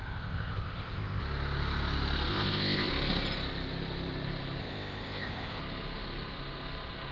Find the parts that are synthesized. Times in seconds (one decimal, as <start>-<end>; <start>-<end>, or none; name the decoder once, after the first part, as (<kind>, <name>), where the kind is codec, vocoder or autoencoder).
0.0-1.2 (codec, ZipCodec); 2.3-2.9; 4.6-5.6